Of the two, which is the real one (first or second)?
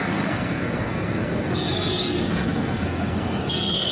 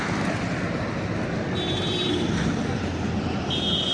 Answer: second